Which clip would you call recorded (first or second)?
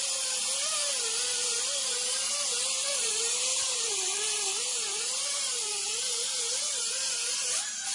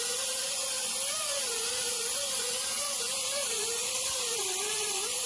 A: first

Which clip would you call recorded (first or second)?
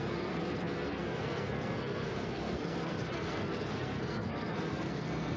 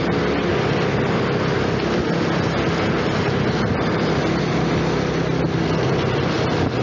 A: second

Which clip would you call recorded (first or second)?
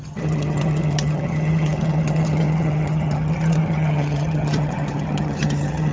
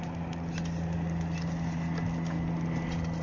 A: second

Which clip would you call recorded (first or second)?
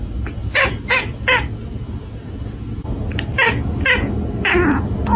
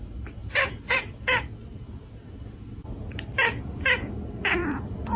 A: first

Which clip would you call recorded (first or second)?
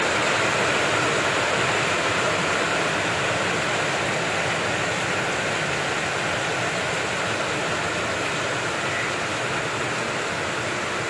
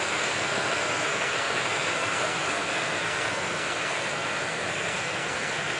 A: first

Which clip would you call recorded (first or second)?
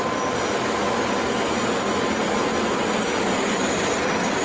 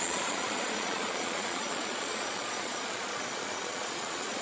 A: first